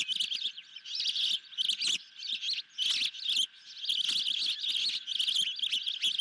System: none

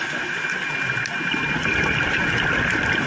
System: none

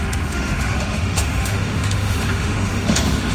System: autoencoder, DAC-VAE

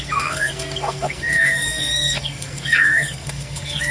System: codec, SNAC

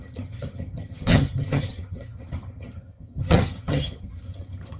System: vocoder, HiFi-GAN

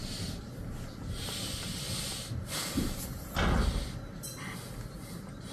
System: none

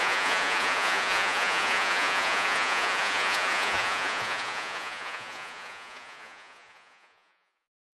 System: vocoder, Vocos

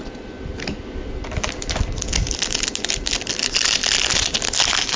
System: none